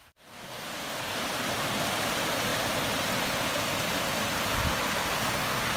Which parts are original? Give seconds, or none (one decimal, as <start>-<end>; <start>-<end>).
1.2-5.2